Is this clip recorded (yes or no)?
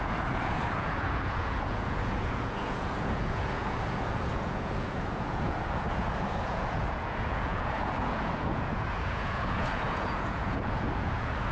no